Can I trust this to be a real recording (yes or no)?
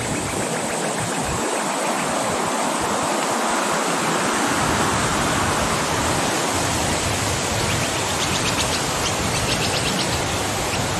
yes